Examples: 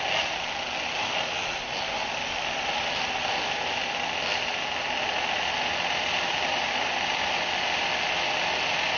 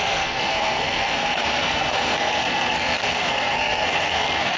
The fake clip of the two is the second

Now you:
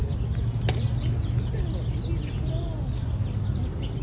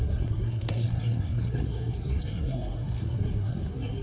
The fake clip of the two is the second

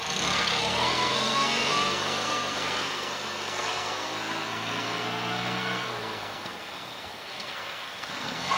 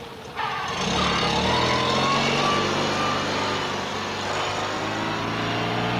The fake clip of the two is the first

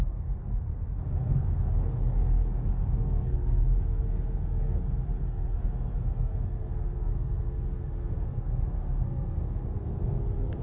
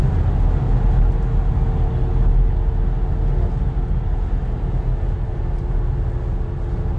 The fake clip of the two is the first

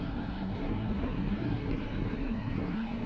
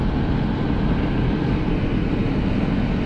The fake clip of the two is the first